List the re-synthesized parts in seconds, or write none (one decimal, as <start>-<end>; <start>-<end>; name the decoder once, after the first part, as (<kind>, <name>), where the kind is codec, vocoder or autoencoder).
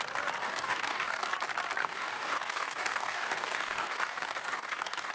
0.4-1.3 (codec, DAC); 1.8-5.1